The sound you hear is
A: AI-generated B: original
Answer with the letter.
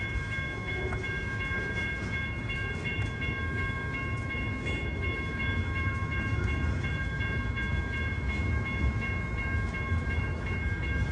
A